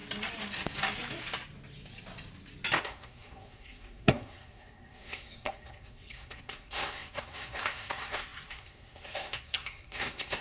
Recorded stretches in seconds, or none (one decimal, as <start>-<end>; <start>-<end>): 0.0-2.8

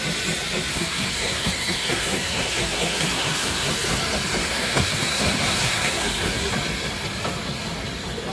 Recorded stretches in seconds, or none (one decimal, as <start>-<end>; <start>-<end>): 0.0-0.7; 3.7-4.4; 6.5-8.3

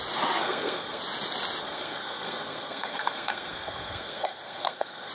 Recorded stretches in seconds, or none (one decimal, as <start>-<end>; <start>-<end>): 0.0-0.4; 1.0-1.6

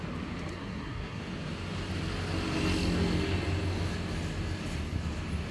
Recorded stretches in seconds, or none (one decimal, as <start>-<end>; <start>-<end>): 0.0-0.5; 1.2-5.5

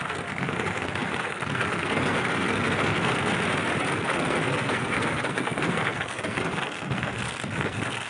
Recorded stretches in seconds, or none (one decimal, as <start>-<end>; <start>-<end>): 3.3-3.9

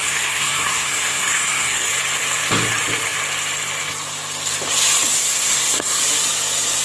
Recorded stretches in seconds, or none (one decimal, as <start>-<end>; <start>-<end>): 1.9-5.2; 6.0-6.8